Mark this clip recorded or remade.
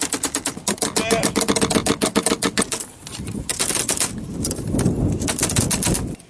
recorded